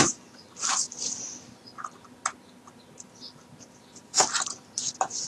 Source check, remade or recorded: recorded